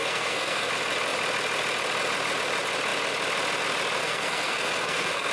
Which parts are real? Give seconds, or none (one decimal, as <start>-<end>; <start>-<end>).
0.7-4.0